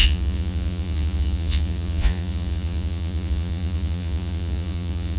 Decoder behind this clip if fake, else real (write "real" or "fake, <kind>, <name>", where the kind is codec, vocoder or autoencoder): fake, vocoder, Vocos